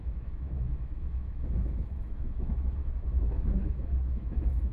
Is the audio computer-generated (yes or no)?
yes